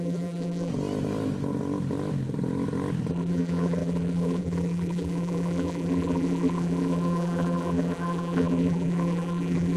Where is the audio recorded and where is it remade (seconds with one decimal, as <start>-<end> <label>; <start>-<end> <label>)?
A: 0.0-0.7 remade; 0.7-3.1 recorded; 3.1-9.8 remade